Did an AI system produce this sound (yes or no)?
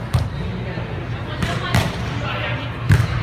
no